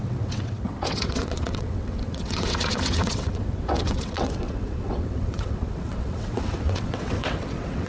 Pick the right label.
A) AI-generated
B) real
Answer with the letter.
A